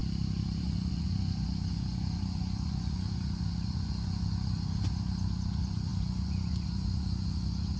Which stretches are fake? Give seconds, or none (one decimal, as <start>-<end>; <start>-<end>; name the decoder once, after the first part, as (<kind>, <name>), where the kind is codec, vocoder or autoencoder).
0.6-7.8 (vocoder, Vocos)